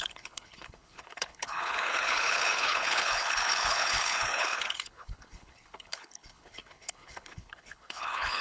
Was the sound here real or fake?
fake